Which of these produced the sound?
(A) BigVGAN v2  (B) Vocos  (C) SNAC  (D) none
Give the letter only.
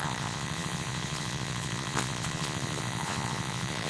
B